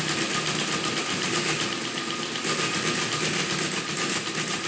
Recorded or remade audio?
recorded